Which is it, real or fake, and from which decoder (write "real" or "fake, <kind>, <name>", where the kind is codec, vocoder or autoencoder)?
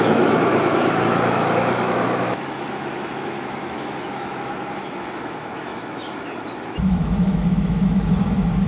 fake, autoencoder, DAC-VAE